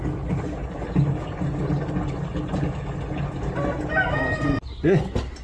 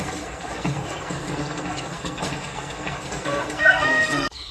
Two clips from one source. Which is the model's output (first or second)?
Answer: second